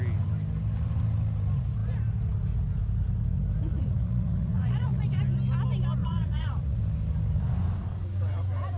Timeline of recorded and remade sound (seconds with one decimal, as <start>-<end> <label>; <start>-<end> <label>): 0.0-3.7 recorded; 3.7-5.2 remade; 5.2-6.0 recorded; 6.0-6.8 remade; 6.8-8.8 recorded